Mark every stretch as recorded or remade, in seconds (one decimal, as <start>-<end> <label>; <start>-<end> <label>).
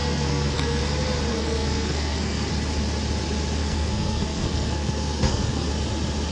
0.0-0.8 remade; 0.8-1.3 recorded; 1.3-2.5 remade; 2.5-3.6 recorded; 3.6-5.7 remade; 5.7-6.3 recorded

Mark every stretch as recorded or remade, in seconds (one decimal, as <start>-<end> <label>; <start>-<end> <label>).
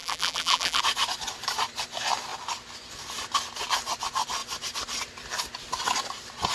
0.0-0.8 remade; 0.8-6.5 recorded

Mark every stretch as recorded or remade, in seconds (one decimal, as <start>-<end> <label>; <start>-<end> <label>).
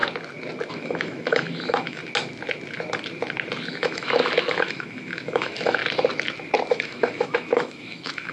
0.0-0.7 recorded; 0.7-2.0 remade; 2.0-3.7 recorded; 3.7-5.8 remade; 5.8-6.7 recorded; 6.7-8.3 remade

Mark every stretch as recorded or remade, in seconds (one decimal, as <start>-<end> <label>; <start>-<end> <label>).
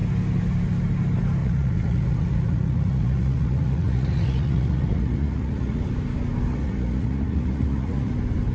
0.0-1.4 recorded; 1.4-5.8 remade; 5.8-6.5 recorded; 6.5-8.1 remade; 8.1-8.5 recorded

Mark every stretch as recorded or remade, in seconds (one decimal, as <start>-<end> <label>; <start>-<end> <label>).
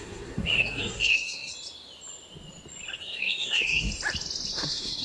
0.0-1.5 remade; 1.5-3.0 recorded; 3.0-3.9 remade; 3.9-4.5 recorded; 4.5-5.0 remade